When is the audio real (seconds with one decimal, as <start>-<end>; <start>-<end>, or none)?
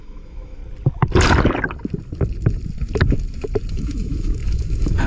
0.6-3.7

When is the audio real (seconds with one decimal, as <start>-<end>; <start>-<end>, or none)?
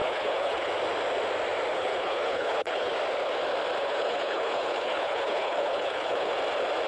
0.7-1.7; 2.9-3.8; 6.3-6.9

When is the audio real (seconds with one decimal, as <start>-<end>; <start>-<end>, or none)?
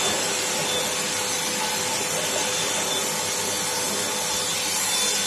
0.0-5.3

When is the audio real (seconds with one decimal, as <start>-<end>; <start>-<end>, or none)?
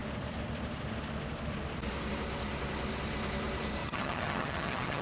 0.0-3.8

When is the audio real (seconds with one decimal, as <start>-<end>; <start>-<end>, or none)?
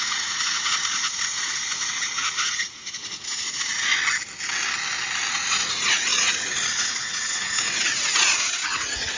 3.9-5.3